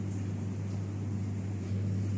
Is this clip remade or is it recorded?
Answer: recorded